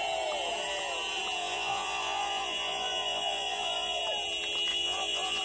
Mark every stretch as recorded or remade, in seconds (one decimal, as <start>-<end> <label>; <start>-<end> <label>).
0.0-1.4 recorded; 1.4-4.0 remade; 4.0-4.7 recorded; 4.7-5.4 remade